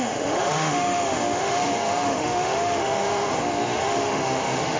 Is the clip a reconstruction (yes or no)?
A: yes